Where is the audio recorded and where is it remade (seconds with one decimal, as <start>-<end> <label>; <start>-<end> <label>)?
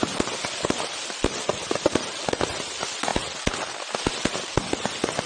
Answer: 0.0-1.5 recorded; 1.5-2.2 remade; 2.2-5.3 recorded